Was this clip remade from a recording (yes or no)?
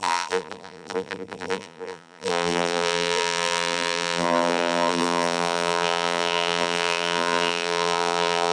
yes